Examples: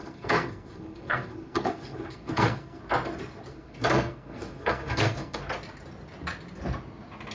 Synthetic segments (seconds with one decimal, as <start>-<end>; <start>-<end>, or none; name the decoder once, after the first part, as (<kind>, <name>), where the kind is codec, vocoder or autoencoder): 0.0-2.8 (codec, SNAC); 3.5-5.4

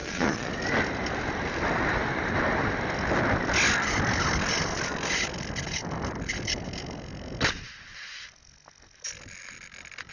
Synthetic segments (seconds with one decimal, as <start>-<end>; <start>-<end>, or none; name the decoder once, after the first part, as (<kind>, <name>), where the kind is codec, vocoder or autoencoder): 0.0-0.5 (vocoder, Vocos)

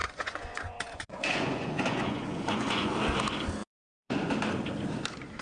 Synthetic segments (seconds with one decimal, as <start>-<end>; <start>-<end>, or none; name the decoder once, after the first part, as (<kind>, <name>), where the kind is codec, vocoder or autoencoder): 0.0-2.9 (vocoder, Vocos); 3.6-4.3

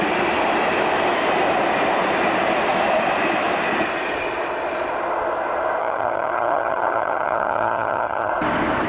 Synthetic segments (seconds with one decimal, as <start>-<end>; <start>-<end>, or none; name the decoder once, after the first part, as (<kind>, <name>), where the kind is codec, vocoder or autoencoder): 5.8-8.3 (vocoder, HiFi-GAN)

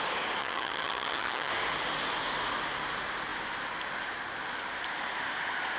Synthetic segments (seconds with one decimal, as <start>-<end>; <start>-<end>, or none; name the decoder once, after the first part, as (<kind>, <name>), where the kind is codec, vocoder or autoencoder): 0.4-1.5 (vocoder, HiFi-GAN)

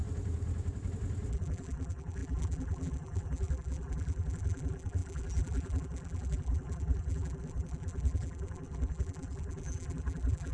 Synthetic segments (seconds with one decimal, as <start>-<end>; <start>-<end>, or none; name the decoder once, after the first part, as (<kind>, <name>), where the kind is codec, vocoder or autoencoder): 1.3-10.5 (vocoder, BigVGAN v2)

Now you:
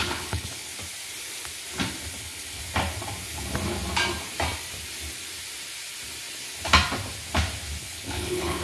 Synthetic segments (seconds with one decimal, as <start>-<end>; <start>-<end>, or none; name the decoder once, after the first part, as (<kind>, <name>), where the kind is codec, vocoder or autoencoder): 0.0-0.7 (codec, HILCodec); 2.2-2.6; 7.8-8.6

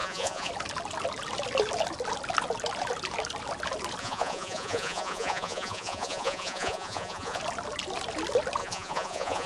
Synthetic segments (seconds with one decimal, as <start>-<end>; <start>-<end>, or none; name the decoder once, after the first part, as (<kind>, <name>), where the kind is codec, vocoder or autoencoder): 0.0-0.5 (vocoder, Vocos); 4.0-7.4; 8.6-9.5